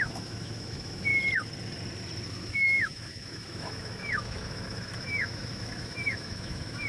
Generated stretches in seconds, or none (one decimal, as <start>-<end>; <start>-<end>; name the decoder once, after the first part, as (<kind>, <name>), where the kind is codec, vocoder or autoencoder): 0.0-1.1 (autoencoder, DAC-VAE); 2.3-6.9